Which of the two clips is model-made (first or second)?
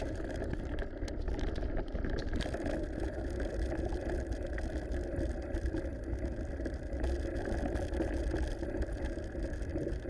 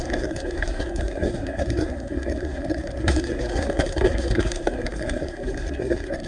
second